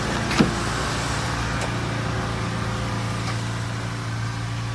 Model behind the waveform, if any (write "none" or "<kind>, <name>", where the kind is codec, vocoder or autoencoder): none